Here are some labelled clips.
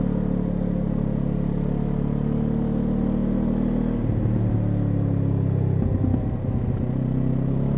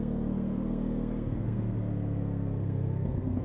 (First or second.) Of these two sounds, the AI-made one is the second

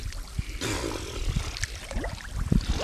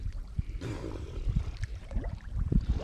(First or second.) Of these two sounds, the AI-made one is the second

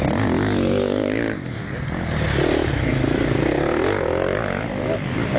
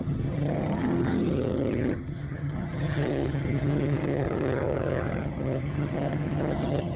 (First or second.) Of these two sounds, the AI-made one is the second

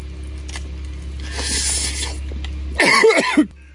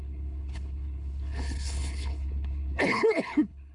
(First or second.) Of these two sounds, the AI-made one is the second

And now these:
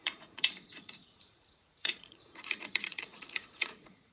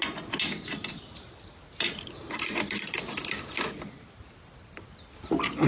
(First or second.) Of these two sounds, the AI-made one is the first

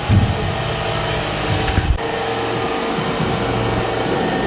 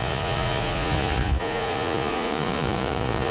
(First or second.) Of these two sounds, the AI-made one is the second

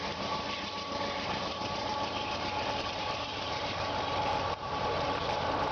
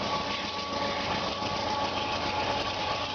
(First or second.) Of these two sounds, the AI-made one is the first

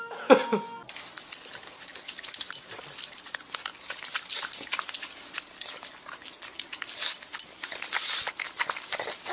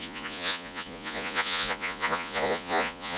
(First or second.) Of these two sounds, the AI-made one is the second